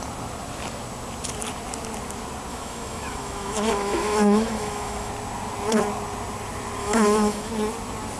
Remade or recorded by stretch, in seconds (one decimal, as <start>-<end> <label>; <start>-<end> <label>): 0.0-2.5 recorded; 2.5-5.1 remade; 5.1-6.8 recorded; 6.8-7.5 remade; 7.5-8.2 recorded